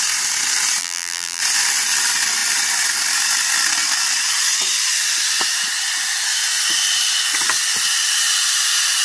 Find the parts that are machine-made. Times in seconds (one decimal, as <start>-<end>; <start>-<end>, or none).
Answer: 0.8-1.4